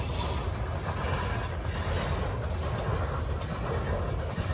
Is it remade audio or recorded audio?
recorded